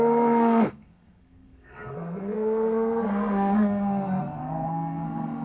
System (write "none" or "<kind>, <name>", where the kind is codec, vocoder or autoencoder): codec, SNAC